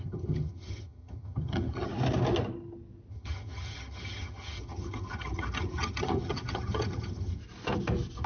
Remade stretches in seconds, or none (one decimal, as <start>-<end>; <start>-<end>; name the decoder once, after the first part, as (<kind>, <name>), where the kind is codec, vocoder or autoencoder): 0.0-1.9 (vocoder, HiFi-GAN); 3.1-7.4